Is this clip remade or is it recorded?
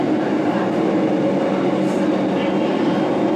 recorded